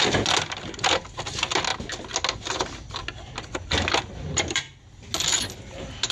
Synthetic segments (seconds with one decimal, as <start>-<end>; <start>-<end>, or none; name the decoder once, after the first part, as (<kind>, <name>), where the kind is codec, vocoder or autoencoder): none